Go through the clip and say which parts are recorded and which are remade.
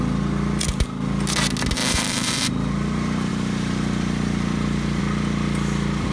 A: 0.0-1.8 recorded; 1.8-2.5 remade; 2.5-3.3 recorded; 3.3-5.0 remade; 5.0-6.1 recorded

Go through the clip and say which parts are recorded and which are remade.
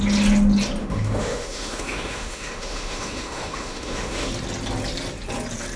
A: 0.0-0.8 recorded; 0.8-4.3 remade; 4.3-5.8 recorded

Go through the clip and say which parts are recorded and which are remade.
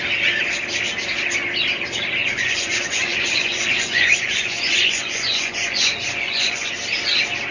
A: 0.0-2.2 recorded; 2.2-6.7 remade; 6.7-7.5 recorded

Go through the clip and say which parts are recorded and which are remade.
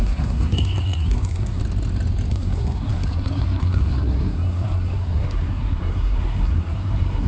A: 0.0-1.6 remade; 1.6-2.3 recorded; 2.3-7.3 remade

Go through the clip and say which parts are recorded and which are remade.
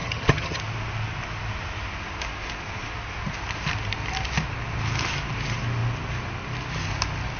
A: 0.0-0.6 remade; 0.6-7.4 recorded